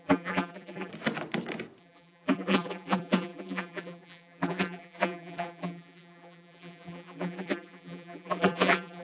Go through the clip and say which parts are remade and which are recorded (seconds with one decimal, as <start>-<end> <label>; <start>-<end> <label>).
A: 0.0-0.9 remade; 0.9-1.8 recorded; 1.8-9.0 remade